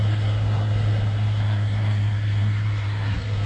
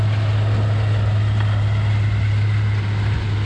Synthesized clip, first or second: first